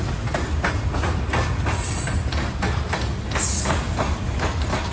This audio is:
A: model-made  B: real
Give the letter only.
B